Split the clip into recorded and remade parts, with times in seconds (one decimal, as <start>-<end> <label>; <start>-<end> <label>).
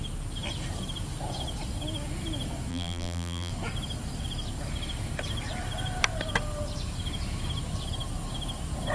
0.0-2.7 recorded; 2.7-3.5 remade; 3.5-8.9 recorded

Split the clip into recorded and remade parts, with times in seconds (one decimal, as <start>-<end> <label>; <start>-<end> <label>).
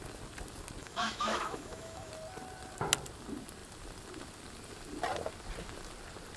0.0-0.8 recorded; 0.8-2.1 remade; 2.1-6.4 recorded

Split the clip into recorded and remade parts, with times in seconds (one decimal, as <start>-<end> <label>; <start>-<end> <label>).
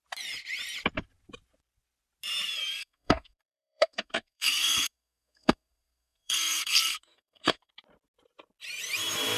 0.0-2.8 recorded; 2.8-7.7 remade; 7.7-9.4 recorded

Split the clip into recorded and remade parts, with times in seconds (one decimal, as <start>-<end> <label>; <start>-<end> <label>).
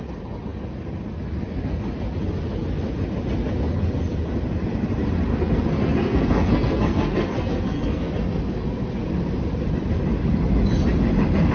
0.0-5.3 recorded; 5.3-8.1 remade; 8.1-11.5 recorded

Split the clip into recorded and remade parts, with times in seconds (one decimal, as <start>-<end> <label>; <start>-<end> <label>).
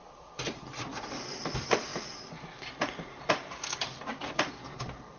0.0-5.2 recorded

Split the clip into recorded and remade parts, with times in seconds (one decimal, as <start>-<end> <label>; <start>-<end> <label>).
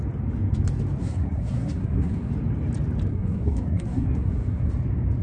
0.0-1.0 recorded; 1.0-2.3 remade; 2.3-3.1 recorded; 3.1-4.7 remade; 4.7-5.2 recorded